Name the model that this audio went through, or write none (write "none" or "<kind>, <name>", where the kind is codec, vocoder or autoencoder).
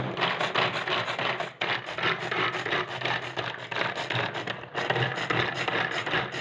none